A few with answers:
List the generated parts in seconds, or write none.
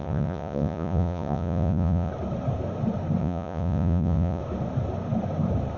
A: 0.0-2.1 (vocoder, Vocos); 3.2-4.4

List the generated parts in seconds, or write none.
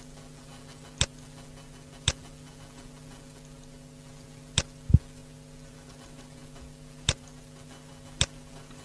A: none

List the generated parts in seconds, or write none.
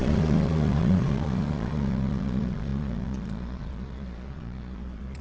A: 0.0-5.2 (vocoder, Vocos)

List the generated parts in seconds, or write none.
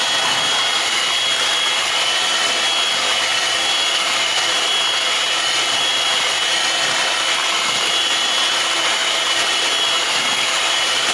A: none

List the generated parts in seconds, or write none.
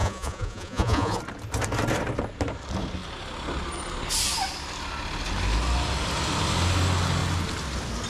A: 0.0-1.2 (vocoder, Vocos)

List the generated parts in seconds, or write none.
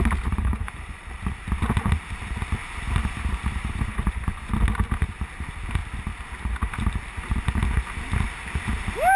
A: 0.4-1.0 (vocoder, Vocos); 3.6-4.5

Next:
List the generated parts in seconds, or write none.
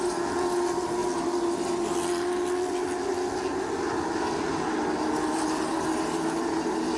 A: none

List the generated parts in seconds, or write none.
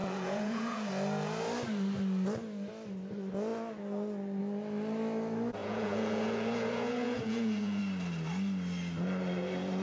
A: 0.0-0.9 (vocoder, Vocos); 5.6-7.8